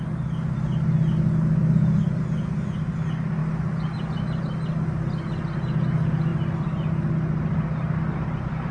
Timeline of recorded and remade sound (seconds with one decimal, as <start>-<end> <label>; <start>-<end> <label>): 0.0-8.7 recorded